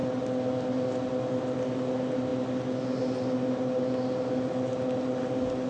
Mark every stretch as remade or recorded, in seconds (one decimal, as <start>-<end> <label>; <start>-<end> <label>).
0.0-5.7 recorded